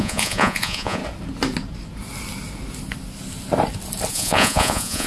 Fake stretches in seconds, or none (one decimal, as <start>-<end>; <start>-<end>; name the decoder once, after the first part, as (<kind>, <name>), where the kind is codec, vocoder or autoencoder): 0.0-1.0 (vocoder, Vocos); 4.1-5.1